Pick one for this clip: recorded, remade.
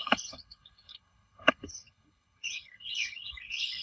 remade